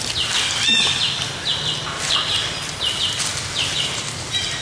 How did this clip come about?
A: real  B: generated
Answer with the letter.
A